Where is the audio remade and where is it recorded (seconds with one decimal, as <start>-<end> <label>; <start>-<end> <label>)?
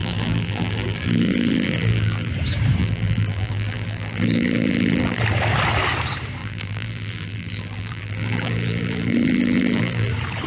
0.0-2.3 remade; 2.3-2.8 recorded; 2.8-5.2 remade; 5.2-6.4 recorded; 6.4-10.1 remade; 10.1-10.5 recorded